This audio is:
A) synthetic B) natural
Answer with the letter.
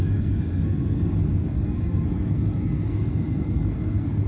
A